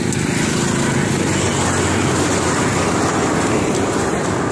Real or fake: real